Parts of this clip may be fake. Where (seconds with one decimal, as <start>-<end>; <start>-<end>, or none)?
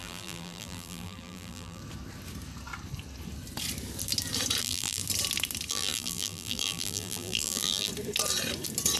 0.0-1.8; 4.6-5.0; 5.7-7.9